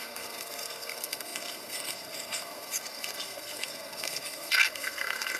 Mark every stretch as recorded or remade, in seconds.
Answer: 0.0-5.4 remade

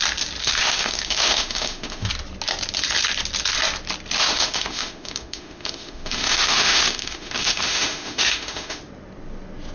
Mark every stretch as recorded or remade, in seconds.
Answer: 0.0-0.4 recorded; 0.4-2.1 remade; 2.1-4.2 recorded; 4.2-8.8 remade; 8.8-9.7 recorded

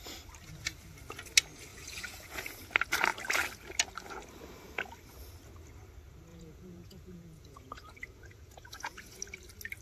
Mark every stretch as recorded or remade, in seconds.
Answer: 0.0-1.7 recorded; 1.7-2.6 remade; 2.6-6.3 recorded; 6.3-9.2 remade; 9.2-9.8 recorded

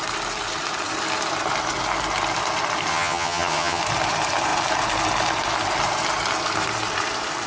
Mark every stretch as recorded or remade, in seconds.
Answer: 0.0-2.9 recorded; 2.9-3.8 remade; 3.8-7.5 recorded

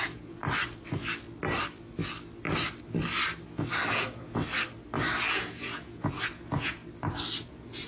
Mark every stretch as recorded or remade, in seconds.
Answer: 0.0-0.4 remade; 0.4-3.9 recorded; 3.9-4.4 remade; 4.4-5.3 recorded; 5.3-6.8 remade; 6.8-7.4 recorded; 7.4-7.9 remade

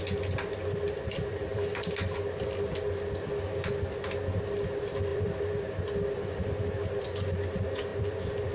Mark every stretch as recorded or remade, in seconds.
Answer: 0.0-1.3 recorded; 1.3-1.9 remade; 1.9-5.1 recorded; 5.1-5.7 remade; 5.7-7.9 recorded; 7.9-8.5 remade